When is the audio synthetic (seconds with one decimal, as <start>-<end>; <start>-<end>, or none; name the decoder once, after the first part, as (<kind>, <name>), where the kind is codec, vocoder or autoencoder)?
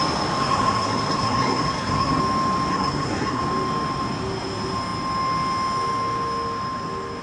0.4-2.2 (codec, SNAC); 2.7-3.4